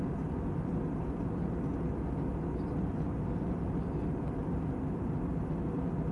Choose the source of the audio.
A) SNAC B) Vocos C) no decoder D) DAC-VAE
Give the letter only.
C